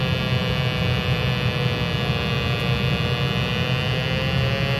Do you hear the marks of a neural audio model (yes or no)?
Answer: no